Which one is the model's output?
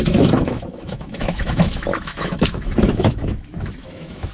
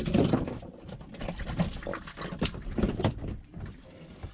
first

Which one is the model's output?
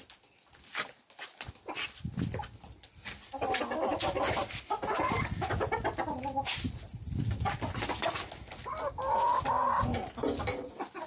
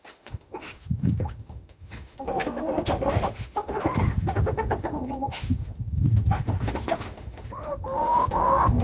second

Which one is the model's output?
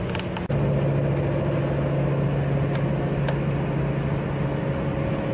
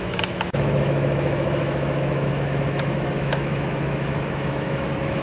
second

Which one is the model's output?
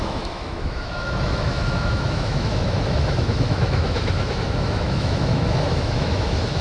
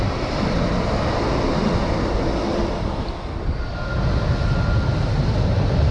first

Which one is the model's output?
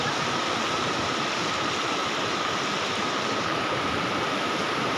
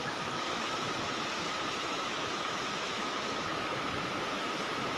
second